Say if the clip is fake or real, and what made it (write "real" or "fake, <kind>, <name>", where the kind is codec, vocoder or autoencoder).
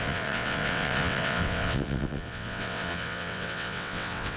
fake, vocoder, WaveNeXt